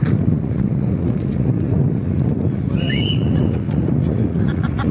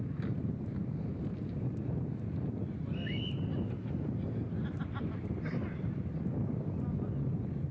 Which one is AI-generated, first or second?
first